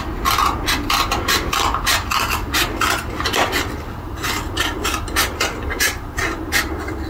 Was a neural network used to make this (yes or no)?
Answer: no